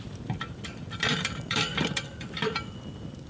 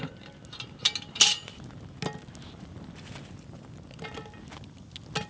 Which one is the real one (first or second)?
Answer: second